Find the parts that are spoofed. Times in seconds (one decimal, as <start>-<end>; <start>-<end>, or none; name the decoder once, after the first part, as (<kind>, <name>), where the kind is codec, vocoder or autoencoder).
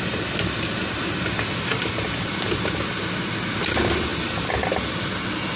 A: none